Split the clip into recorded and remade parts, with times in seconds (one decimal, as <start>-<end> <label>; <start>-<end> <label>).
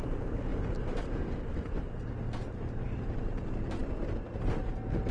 0.0-0.5 recorded; 0.5-1.2 remade; 1.2-5.1 recorded